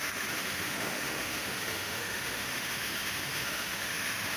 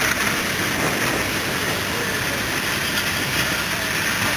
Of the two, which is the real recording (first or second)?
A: second